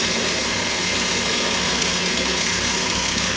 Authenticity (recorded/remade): remade